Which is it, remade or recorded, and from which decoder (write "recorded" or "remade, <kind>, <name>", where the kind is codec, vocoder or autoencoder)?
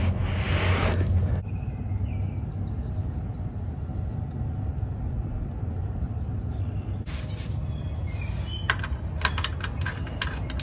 recorded